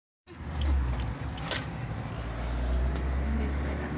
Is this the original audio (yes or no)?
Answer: yes